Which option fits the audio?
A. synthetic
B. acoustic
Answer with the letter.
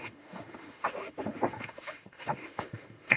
A